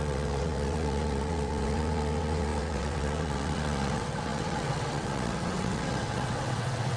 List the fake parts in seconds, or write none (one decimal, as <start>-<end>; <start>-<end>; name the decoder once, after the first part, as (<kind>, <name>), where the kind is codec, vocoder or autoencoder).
0.0-7.0 (vocoder, WaveNeXt)